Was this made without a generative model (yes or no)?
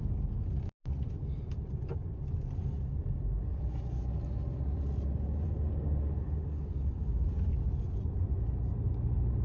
yes